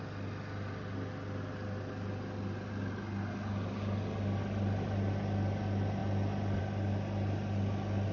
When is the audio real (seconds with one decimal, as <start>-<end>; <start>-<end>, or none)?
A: 0.0-8.1